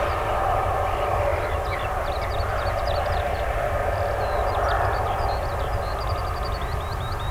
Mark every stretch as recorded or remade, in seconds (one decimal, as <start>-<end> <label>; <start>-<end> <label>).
0.0-7.3 recorded